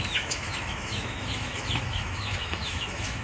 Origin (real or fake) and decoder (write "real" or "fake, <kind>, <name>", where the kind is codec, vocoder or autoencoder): fake, autoencoder, DAC-VAE